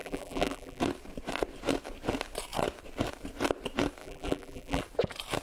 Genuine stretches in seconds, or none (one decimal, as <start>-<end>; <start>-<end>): 0.8-4.0; 4.8-5.4